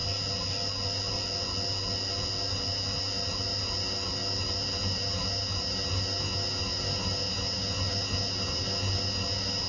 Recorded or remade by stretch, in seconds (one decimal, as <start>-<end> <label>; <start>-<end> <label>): 0.0-9.7 recorded